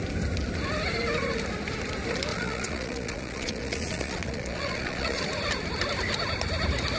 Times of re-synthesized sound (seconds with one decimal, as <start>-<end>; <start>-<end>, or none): 2.3-5.2